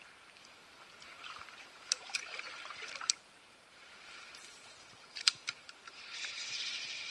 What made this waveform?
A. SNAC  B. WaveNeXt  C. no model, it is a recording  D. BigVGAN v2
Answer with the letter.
D